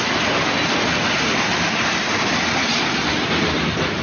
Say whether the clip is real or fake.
real